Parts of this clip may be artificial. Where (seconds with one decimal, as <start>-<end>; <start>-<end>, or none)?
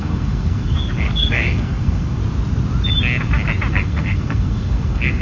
0.0-2.2; 3.7-5.2